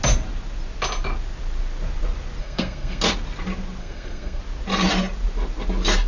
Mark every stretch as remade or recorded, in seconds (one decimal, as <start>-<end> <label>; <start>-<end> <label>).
0.0-2.4 recorded; 2.4-3.0 remade; 3.0-3.8 recorded; 3.8-4.4 remade; 4.4-6.1 recorded